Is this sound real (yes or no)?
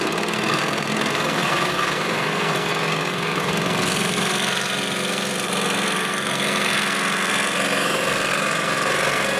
no